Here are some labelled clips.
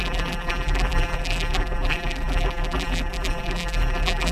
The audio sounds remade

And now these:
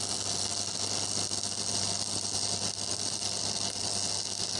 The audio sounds recorded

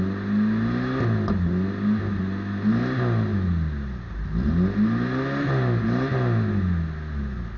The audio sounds recorded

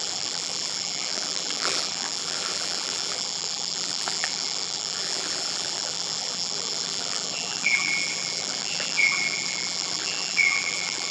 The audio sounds remade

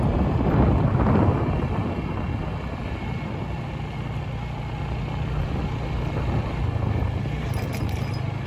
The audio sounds recorded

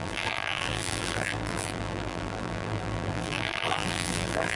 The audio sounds remade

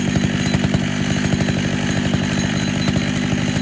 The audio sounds remade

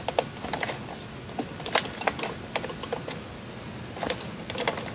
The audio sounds recorded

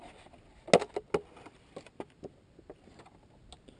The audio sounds recorded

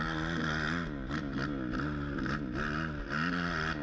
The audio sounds recorded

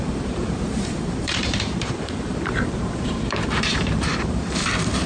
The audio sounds remade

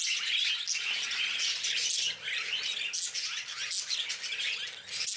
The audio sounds recorded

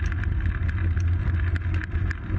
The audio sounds recorded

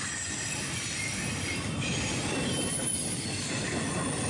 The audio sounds remade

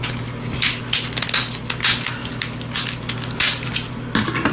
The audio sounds recorded